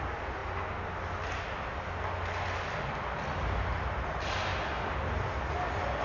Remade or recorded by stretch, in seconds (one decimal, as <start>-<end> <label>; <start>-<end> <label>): 0.0-6.0 recorded